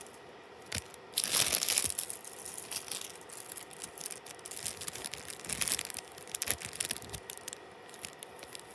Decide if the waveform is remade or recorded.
recorded